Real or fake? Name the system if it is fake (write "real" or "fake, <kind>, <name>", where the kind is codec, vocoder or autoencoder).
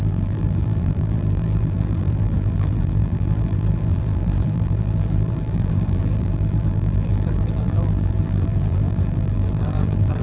fake, vocoder, BigVGAN v2